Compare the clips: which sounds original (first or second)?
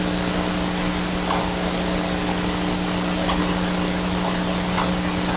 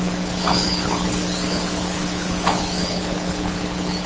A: first